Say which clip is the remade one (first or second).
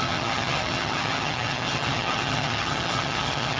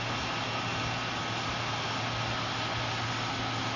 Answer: first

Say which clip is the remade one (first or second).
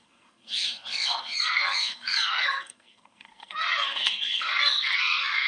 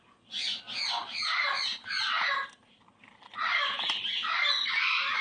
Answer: first